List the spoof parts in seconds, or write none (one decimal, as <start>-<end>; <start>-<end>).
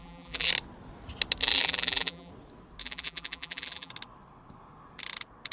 0.0-0.5; 1.4-2.3; 2.8-3.9